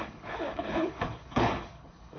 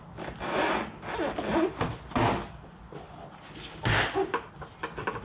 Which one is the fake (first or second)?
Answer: first